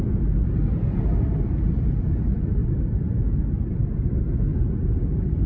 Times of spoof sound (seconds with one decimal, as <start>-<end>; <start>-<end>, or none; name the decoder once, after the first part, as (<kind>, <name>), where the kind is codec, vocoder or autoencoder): 0.4-1.2 (vocoder, BigVGAN v2); 4.5-5.1